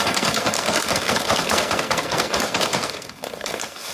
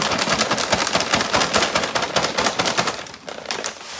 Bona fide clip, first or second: second